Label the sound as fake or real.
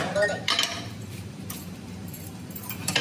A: fake